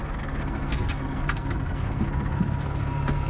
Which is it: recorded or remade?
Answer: remade